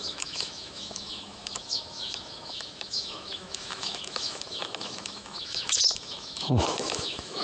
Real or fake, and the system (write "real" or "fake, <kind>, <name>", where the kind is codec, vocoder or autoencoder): fake, autoencoder, DAC-VAE